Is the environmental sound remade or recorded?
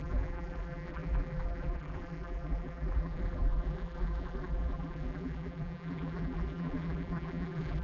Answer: remade